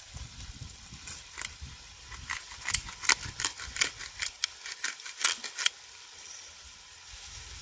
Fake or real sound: real